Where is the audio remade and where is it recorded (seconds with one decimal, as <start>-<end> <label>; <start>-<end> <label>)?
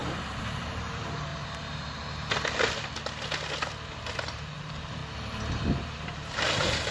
0.0-0.6 recorded; 0.6-1.3 remade; 1.3-4.1 recorded; 4.1-5.0 remade; 5.0-6.1 recorded; 6.1-6.9 remade